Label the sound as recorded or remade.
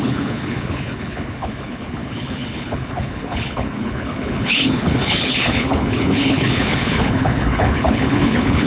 remade